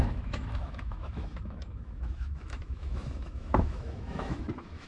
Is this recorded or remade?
remade